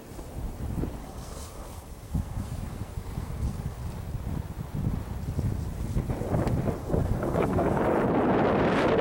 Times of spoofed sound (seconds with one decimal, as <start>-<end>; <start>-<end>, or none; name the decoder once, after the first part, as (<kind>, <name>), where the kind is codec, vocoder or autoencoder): 1.0-3.8 (codec, SNAC); 6.8-7.8